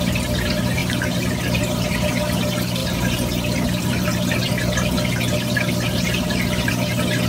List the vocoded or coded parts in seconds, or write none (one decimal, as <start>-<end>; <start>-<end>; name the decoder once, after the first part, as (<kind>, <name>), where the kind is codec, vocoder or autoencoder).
none